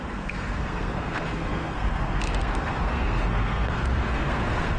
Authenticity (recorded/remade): remade